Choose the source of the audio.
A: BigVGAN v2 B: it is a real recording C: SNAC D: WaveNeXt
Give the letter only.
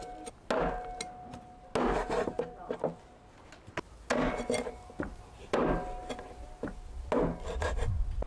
B